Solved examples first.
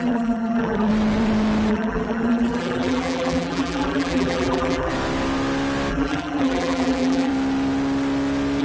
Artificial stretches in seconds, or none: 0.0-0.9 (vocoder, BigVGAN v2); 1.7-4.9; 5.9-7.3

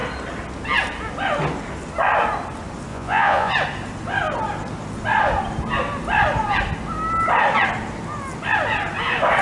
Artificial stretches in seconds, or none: 2.9-3.5 (vocoder, Vocos)